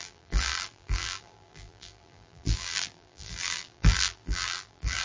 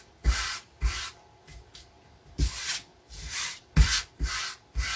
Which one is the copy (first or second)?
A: first